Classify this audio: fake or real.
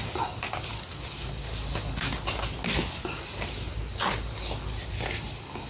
real